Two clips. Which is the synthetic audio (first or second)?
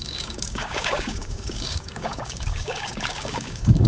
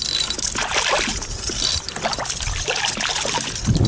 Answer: first